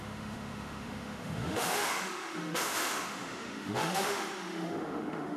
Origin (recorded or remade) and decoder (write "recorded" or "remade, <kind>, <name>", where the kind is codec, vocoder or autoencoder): remade, autoencoder, DAC-VAE